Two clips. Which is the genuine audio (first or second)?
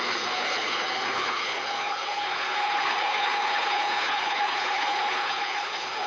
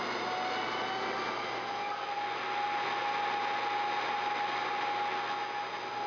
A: second